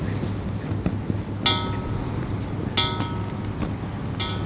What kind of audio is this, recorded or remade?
recorded